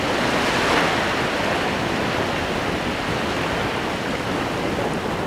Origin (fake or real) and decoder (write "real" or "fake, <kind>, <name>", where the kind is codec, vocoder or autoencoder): real